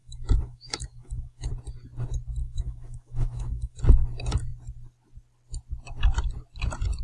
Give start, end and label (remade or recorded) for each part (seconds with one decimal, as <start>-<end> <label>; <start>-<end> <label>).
0.0-1.5 remade; 1.5-2.4 recorded; 2.4-3.8 remade; 3.8-7.0 recorded